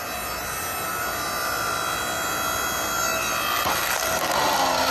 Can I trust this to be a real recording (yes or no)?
yes